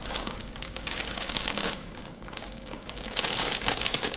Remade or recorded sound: remade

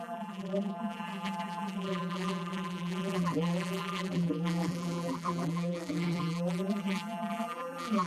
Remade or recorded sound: remade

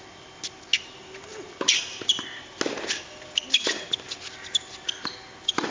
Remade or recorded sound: recorded